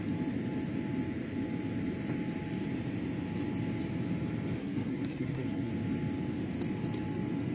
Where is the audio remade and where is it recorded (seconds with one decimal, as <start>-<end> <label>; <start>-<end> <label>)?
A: 0.0-4.6 recorded; 4.6-5.7 remade; 5.7-7.5 recorded